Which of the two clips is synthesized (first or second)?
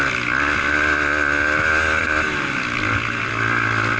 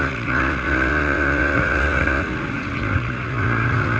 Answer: second